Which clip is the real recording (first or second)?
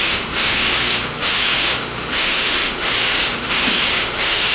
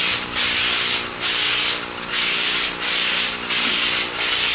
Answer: second